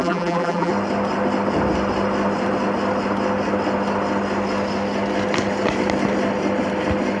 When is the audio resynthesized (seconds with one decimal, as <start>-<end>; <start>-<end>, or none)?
0.0-0.7